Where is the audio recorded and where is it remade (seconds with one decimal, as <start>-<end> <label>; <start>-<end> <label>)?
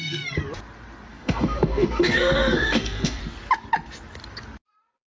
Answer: 0.0-0.4 remade; 0.4-1.1 recorded; 1.1-3.2 remade; 3.2-5.1 recorded